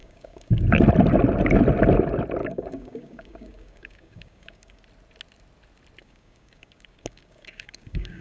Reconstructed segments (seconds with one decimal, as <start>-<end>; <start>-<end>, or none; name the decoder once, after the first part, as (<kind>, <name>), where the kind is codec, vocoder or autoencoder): 0.0-0.6 (codec, DAC); 2.4-4.8; 6.0-8.2